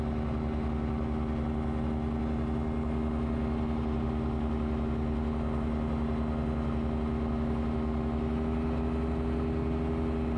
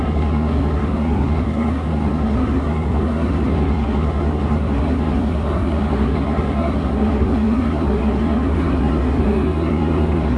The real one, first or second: first